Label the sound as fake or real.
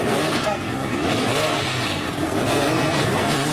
fake